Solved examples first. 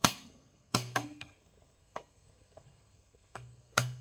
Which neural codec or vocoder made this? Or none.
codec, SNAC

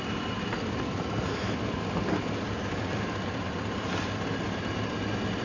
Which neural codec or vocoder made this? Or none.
none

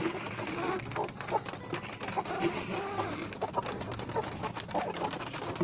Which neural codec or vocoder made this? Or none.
none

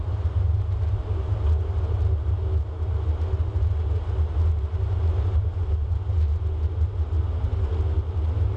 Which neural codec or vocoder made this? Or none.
none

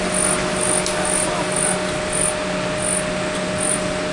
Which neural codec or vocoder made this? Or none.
none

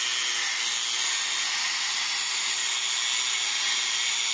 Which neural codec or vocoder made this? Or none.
none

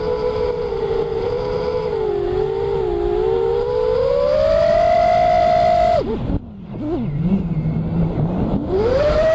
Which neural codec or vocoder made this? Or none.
none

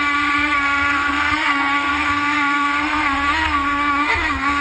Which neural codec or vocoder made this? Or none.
codec, SNAC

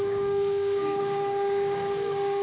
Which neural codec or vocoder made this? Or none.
codec, DAC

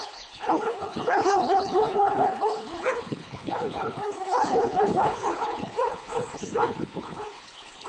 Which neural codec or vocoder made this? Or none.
codec, HILCodec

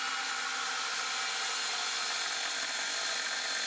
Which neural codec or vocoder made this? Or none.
none